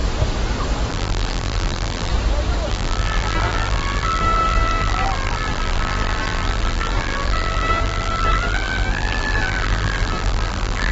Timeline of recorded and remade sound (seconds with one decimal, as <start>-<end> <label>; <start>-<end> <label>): 0.0-0.9 recorded; 0.9-2.1 remade; 2.1-2.7 recorded; 2.7-10.9 remade